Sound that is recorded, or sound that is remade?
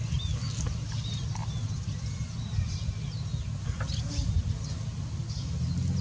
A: recorded